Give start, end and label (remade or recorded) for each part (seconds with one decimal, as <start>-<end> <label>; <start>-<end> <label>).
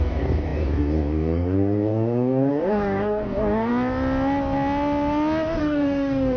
0.0-3.7 remade; 3.7-5.6 recorded; 5.6-6.4 remade